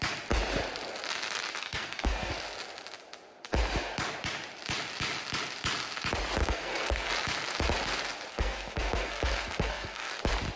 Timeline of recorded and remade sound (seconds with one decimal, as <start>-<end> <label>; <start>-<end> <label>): 0.0-1.6 recorded; 1.6-2.3 remade; 2.3-6.4 recorded; 6.4-7.1 remade; 7.1-8.3 recorded; 8.3-10.1 remade; 10.1-10.6 recorded

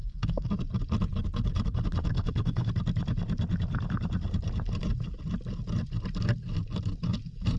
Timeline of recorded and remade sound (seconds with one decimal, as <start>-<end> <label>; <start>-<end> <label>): 0.0-0.5 remade; 0.5-2.1 recorded; 2.1-2.7 remade; 2.7-7.6 recorded

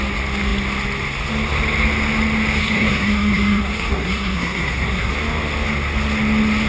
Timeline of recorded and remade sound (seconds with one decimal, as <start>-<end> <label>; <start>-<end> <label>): 0.0-2.6 recorded; 2.6-5.1 remade; 5.1-6.7 recorded

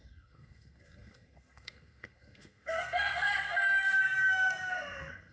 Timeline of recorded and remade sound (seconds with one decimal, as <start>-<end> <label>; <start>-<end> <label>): 0.0-5.3 remade